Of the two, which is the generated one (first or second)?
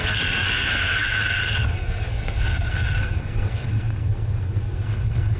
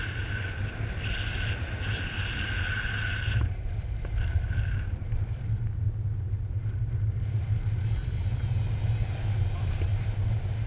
first